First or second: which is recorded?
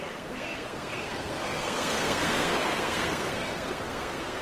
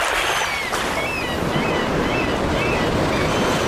second